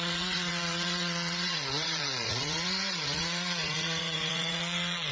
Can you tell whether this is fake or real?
fake